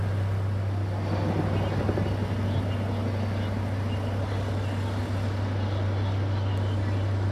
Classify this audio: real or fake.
real